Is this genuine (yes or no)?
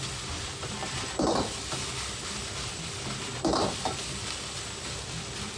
yes